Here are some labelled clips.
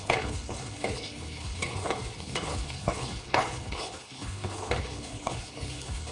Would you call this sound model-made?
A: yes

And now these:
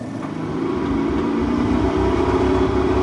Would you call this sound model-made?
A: yes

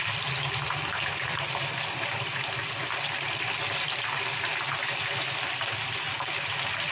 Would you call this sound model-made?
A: yes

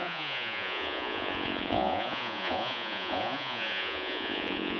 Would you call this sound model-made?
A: yes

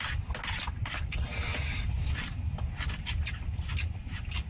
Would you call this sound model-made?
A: no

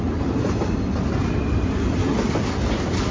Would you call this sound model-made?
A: no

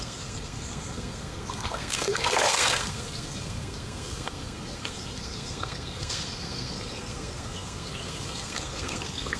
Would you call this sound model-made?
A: yes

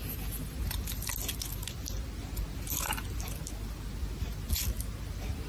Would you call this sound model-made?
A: no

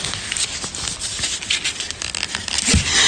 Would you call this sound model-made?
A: no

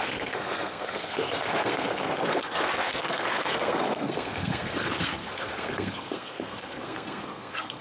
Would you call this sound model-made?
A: yes